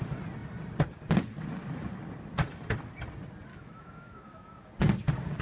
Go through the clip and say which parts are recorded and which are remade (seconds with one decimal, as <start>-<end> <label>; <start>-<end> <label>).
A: 0.0-3.5 recorded; 3.5-4.7 remade; 4.7-5.4 recorded